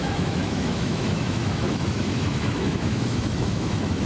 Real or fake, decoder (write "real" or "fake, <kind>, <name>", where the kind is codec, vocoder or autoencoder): fake, autoencoder, DAC-VAE